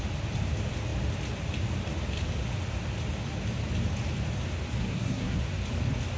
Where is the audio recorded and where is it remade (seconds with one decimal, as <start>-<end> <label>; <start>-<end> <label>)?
0.0-4.8 recorded; 4.8-5.4 remade; 5.4-6.2 recorded